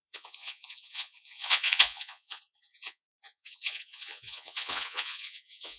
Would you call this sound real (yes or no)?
no